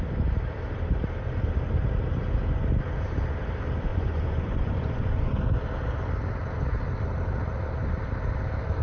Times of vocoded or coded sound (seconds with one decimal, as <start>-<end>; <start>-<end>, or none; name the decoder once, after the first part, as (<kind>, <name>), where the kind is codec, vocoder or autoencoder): 3.9-5.3 (vocoder, Vocos)